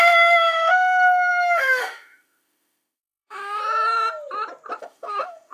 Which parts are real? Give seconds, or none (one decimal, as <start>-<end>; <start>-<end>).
3.6-4.8

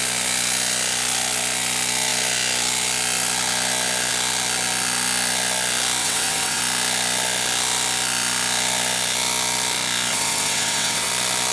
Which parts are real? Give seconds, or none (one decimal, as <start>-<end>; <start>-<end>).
0.0-6.0; 6.6-10.1; 11.1-11.5

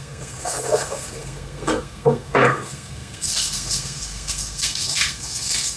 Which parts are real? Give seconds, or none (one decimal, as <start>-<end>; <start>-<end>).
none

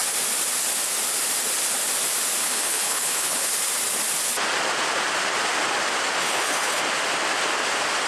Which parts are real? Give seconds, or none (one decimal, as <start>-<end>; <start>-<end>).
0.0-2.4; 3.5-6.2; 6.8-8.1

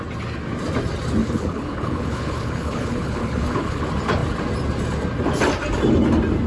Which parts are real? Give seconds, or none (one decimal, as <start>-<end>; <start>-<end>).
0.0-1.2; 3.8-6.5

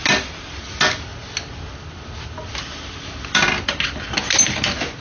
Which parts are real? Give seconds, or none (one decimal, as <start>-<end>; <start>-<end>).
0.0-5.0

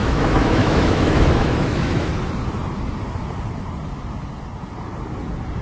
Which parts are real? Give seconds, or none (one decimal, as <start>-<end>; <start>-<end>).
2.1-5.6

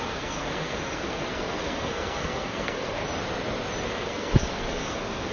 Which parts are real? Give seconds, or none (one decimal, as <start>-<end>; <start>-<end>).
3.0-3.9